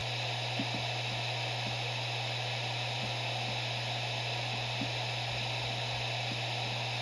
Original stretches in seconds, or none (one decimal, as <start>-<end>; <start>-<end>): 0.0-7.0